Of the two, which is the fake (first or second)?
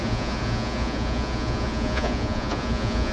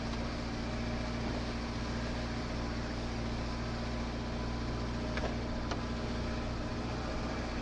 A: first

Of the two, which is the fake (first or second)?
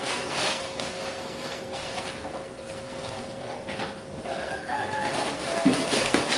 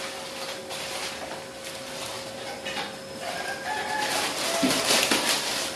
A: first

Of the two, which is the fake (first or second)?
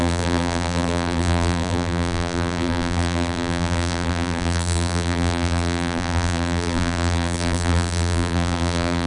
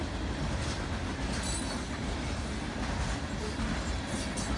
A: first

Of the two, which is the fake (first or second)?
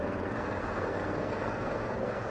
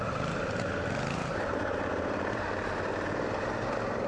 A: first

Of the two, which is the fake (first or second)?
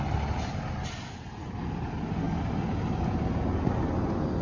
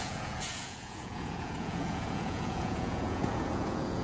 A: second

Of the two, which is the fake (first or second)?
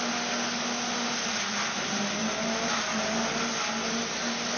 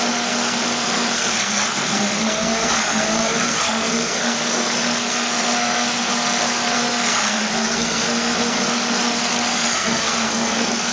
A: second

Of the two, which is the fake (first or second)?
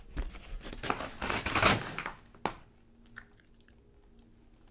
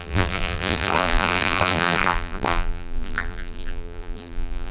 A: second